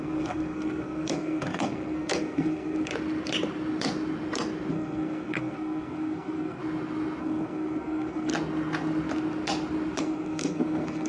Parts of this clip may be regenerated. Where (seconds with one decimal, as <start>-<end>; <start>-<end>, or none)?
0.0-2.9; 4.7-6.6; 7.2-8.3; 10.0-11.1